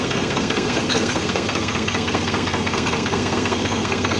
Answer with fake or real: fake